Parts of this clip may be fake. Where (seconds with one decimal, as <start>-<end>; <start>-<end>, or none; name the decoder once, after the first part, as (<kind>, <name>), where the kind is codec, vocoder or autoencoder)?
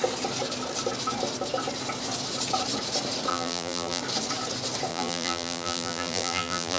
3.3-4.0 (vocoder, BigVGAN v2); 4.9-6.8